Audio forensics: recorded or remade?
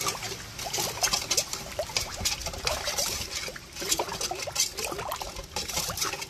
recorded